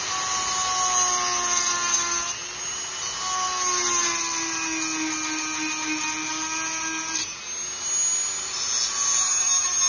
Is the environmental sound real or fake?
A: real